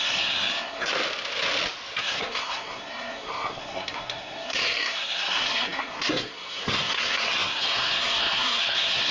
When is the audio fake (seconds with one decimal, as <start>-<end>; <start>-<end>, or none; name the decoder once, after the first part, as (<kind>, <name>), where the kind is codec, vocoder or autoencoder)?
0.0-0.9 (codec, SNAC); 2.0-9.1